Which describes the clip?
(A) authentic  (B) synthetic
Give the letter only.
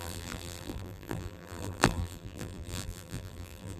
B